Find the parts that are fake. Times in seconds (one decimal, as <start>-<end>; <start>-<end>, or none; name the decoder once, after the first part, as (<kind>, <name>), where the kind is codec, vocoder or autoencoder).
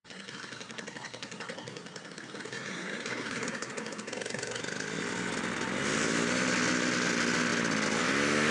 0.0-4.6 (codec, SNAC)